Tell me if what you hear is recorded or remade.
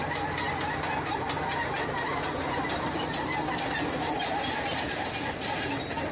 recorded